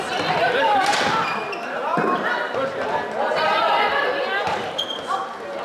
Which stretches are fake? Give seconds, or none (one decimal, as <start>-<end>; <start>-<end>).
none